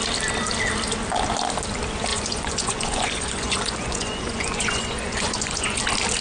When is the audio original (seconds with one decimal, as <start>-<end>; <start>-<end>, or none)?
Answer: 0.0-2.1; 5.8-6.2